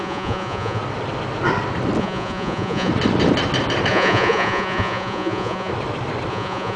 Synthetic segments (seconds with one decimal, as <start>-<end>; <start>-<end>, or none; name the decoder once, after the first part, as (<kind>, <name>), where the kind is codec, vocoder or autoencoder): 0.0-0.8 (vocoder, Vocos); 2.0-2.9; 3.9-5.7; 6.3-6.8